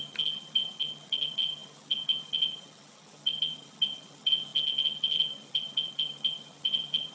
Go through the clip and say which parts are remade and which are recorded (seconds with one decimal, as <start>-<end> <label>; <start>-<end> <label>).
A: 0.0-7.1 remade